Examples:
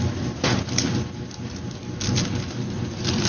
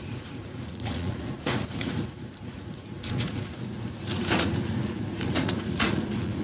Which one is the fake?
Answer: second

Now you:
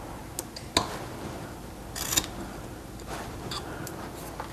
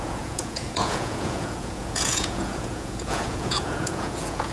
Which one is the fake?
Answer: second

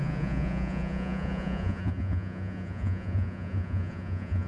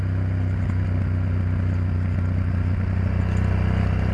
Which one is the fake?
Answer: first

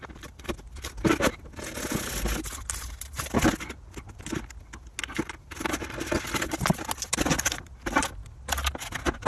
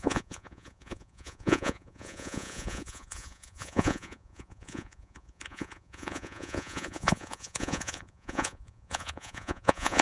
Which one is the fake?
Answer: second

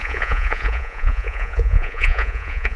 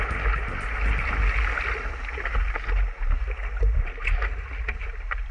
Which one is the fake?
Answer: first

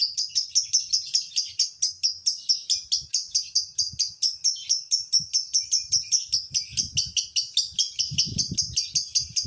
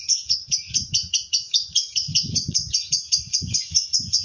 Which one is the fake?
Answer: second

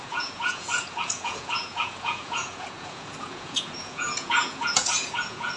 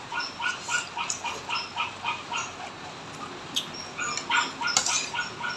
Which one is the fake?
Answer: first